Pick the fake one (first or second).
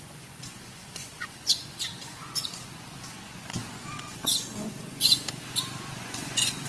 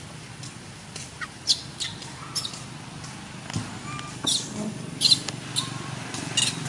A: first